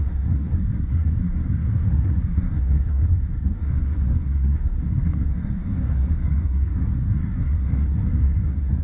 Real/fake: fake